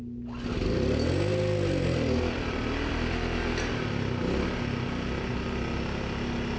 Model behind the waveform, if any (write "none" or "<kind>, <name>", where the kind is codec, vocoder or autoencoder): none